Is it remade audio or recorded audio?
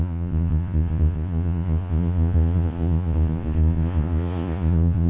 remade